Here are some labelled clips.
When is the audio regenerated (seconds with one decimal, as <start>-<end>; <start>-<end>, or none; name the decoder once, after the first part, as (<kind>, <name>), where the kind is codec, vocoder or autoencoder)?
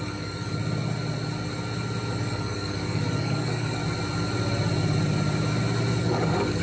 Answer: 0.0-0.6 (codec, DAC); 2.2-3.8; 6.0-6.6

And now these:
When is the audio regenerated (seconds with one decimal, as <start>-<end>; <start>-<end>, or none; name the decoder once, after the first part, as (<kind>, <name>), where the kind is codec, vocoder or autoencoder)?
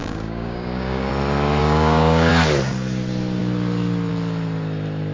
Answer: 0.0-1.1 (codec, DAC); 1.6-2.3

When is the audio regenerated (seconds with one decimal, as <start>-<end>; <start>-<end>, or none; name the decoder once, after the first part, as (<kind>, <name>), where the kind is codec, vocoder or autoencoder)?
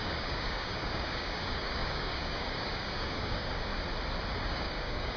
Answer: 0.0-3.7 (codec, DAC); 4.3-5.2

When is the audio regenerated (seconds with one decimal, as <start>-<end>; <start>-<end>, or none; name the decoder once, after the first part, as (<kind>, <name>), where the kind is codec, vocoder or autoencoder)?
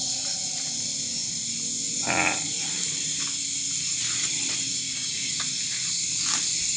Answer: 4.7-5.3 (codec, DAC)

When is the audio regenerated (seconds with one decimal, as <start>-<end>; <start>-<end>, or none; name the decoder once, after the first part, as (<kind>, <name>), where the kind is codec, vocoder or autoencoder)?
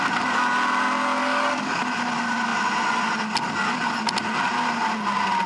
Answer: 1.2-1.8 (codec, DAC)